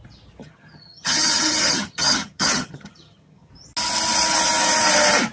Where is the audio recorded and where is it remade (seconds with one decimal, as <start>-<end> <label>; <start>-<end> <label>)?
0.0-0.4 recorded; 0.4-3.5 remade; 3.5-5.3 recorded